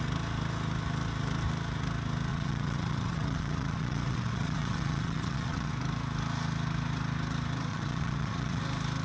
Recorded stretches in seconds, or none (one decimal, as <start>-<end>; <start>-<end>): 0.0-2.3; 5.7-7.7; 8.6-9.0